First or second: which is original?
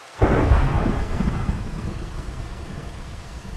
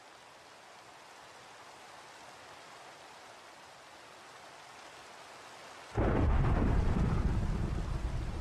second